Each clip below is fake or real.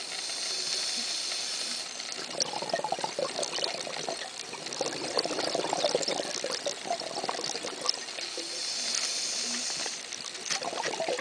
real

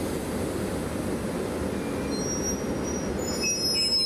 real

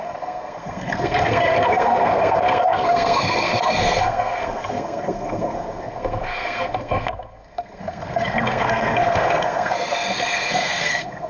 fake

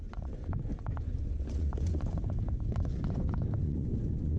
fake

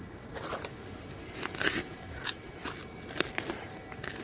real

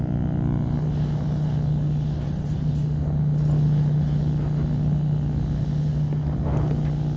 real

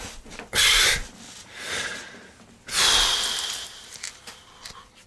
real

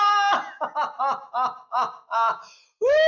real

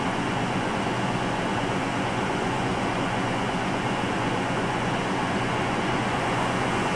fake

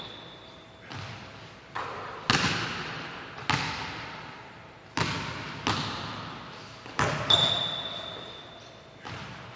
real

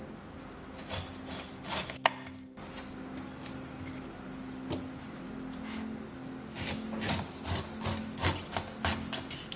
real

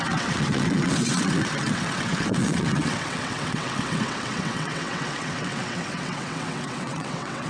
fake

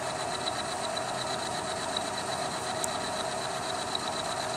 real